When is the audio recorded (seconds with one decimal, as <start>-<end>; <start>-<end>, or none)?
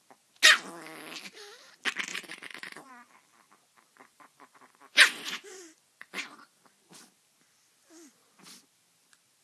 0.0-2.1; 2.9-3.9; 6.6-9.4